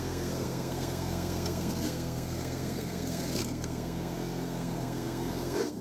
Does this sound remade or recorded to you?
remade